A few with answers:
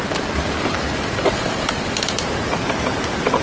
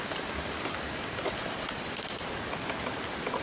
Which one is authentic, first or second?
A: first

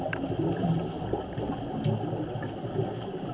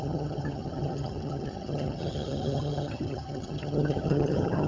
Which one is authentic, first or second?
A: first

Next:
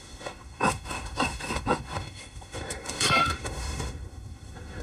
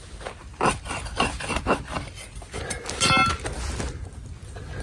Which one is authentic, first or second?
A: second